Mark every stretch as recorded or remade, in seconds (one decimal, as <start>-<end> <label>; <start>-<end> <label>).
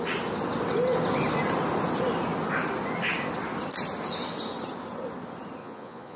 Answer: 0.0-5.6 recorded; 5.6-6.2 remade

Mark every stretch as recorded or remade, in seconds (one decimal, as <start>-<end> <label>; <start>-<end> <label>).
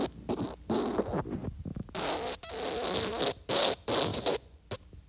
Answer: 0.0-4.1 recorded; 4.1-4.6 remade; 4.6-5.1 recorded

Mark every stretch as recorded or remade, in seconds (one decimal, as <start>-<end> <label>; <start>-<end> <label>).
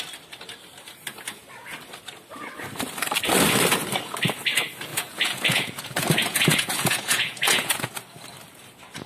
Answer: 0.0-4.9 recorded; 4.9-7.9 remade; 7.9-9.1 recorded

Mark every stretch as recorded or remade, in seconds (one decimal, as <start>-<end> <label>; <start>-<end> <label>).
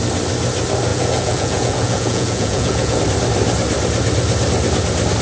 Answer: 0.0-0.9 recorded; 0.9-3.0 remade; 3.0-5.2 recorded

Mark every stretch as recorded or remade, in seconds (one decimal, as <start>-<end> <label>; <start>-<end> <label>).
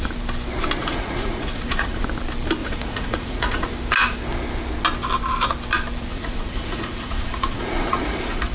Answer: 0.0-0.8 recorded; 0.8-2.0 remade; 2.0-2.6 recorded; 2.6-3.7 remade; 3.7-6.1 recorded; 6.1-8.5 remade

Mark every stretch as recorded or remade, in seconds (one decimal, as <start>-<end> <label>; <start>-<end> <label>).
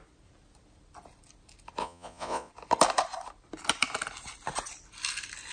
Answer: 0.0-1.8 recorded; 1.8-2.5 remade; 2.5-5.5 recorded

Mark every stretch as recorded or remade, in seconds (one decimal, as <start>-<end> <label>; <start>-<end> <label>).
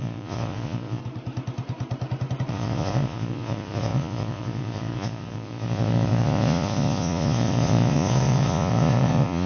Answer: 0.0-1.0 remade; 1.0-2.5 recorded; 2.5-9.5 remade